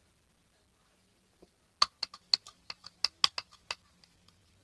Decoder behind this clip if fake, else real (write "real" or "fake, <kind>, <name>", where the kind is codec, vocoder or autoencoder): real